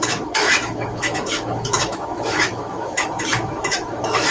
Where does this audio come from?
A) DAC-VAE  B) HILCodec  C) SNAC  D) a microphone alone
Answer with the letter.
A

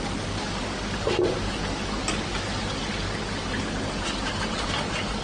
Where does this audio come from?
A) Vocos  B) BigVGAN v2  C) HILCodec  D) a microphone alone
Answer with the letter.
D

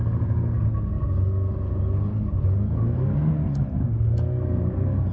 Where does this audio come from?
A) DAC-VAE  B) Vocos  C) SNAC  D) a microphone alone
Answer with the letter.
D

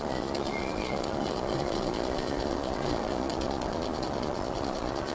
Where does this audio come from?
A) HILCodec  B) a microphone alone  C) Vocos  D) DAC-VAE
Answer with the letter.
C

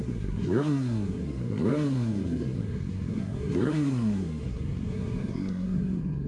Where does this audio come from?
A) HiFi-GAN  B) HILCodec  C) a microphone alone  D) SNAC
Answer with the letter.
D